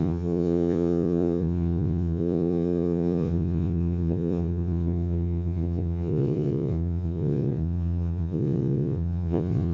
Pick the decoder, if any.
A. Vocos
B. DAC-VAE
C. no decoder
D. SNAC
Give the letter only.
A